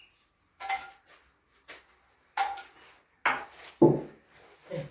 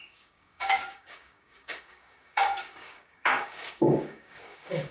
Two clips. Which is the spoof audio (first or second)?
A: second